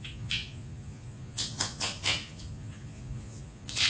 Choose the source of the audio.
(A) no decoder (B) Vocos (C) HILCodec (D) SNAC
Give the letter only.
B